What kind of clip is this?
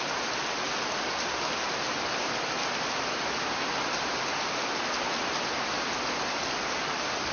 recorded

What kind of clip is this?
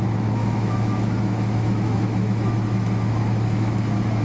remade